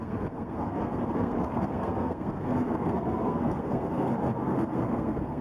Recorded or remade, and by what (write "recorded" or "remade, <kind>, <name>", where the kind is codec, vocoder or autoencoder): remade, codec, SNAC